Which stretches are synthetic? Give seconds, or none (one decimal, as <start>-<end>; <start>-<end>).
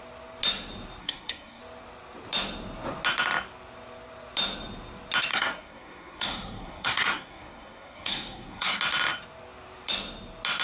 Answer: 1.0-1.6; 5.3-8.8